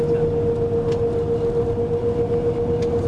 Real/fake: real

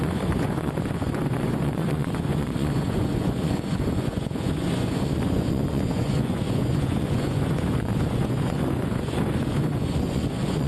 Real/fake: fake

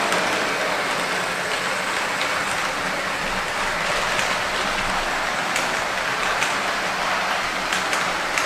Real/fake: real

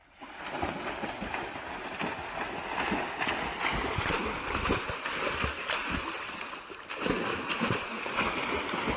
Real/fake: real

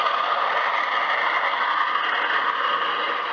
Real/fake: real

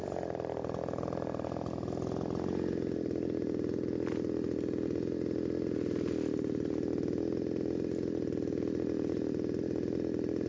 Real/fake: real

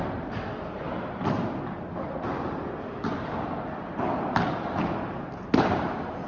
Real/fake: real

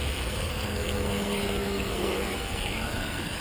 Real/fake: fake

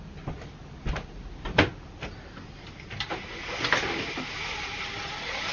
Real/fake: real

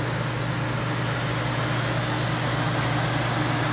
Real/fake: real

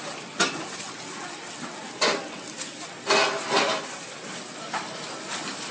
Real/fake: real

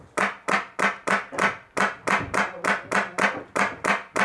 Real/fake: real